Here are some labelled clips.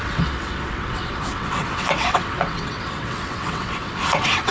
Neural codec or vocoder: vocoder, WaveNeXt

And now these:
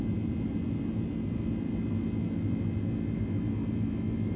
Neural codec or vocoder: none